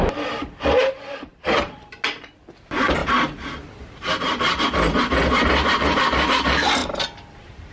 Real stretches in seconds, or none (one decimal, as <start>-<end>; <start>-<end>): 0.0-3.0; 4.6-6.8